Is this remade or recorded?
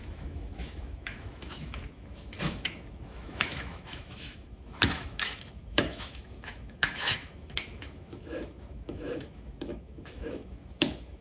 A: remade